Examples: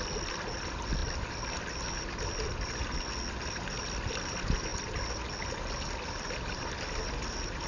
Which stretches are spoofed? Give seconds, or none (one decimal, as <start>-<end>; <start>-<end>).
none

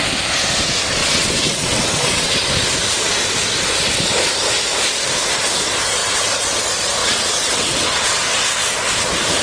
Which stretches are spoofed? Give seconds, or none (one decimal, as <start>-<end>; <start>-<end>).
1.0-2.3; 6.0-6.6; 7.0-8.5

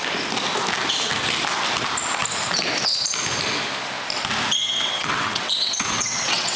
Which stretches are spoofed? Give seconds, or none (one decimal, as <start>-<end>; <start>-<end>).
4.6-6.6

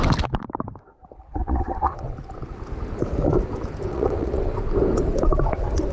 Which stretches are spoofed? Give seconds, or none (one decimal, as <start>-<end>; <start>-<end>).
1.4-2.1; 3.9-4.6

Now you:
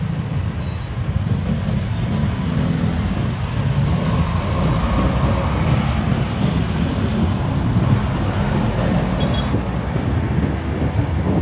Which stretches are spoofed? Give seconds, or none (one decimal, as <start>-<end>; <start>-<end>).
none

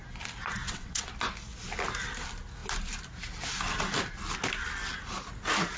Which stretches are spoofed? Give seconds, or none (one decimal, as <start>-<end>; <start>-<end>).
0.6-1.1

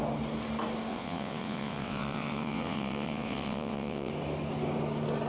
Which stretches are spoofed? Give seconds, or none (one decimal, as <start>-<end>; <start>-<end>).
0.9-4.1

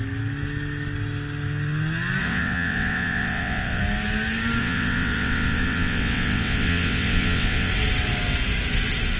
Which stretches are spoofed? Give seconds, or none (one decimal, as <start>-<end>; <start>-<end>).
2.2-3.8; 4.6-7.7